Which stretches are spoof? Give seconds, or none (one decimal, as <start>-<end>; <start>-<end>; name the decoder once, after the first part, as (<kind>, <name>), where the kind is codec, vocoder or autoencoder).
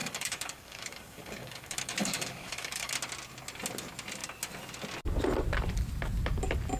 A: 0.0-2.9 (codec, DAC)